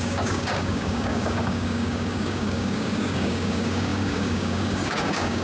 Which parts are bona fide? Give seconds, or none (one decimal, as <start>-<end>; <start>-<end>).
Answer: none